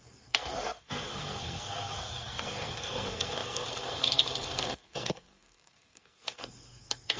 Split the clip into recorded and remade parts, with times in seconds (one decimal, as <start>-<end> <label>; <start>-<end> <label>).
0.0-7.2 remade